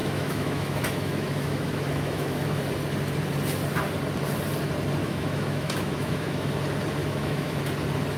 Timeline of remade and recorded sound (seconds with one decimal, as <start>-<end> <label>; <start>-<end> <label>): 0.0-2.6 remade; 2.6-5.0 recorded; 5.0-6.5 remade; 6.5-7.0 recorded; 7.0-7.6 remade; 7.6-8.2 recorded